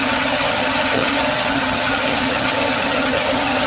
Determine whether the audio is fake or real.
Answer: fake